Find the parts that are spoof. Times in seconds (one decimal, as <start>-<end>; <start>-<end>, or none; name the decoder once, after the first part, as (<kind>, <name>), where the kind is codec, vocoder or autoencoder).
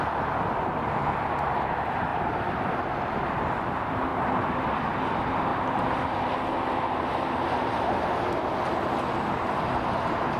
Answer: 4.1-4.7 (vocoder, BigVGAN v2); 5.5-8.3